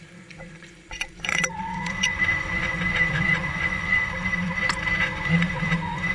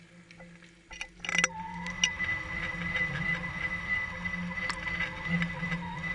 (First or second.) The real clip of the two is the second